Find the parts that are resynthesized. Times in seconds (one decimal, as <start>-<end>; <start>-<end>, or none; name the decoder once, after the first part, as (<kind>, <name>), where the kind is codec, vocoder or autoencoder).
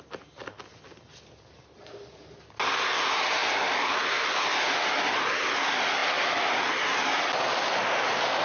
none